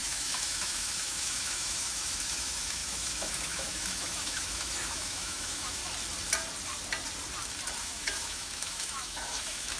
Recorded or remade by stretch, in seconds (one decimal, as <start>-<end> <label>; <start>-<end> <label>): 0.0-5.8 remade; 5.8-7.8 recorded; 7.8-9.8 remade